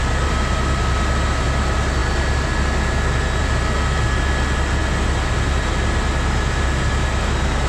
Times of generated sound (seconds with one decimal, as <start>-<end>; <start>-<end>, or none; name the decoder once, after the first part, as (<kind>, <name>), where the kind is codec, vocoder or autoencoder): none